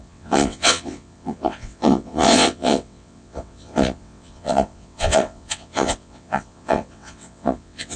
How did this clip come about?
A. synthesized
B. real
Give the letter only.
A